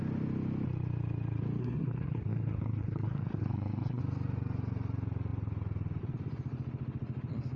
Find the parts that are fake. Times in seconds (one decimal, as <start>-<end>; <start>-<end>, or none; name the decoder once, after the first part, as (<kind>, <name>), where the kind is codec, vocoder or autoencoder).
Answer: 1.6-4.0 (codec, SNAC)